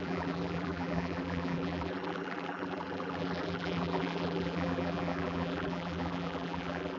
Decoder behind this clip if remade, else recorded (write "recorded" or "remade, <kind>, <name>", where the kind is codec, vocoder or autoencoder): remade, vocoder, BigVGAN v2